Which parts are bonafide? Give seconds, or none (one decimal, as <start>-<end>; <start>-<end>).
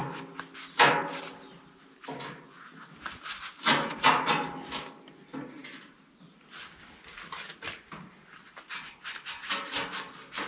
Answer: 0.0-10.5